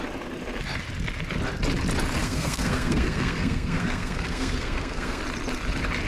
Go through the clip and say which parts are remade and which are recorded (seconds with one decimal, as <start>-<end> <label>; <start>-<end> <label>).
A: 0.0-2.2 recorded; 2.2-5.2 remade; 5.2-6.1 recorded